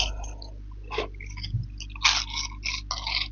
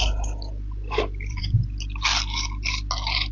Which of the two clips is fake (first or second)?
second